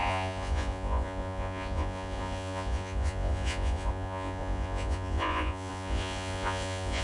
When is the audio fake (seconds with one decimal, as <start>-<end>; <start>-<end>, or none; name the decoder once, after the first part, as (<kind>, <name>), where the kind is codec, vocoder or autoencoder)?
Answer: 0.0-7.0 (vocoder, Vocos)